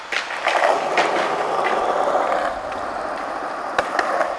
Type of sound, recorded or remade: recorded